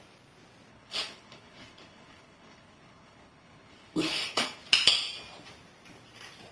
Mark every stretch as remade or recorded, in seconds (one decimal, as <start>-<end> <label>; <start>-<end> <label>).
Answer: 0.0-0.7 recorded; 0.7-4.6 remade; 4.6-6.5 recorded